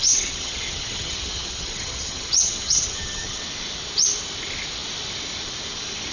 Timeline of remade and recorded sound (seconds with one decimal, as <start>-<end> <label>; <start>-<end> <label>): 0.0-3.4 remade; 3.4-6.1 recorded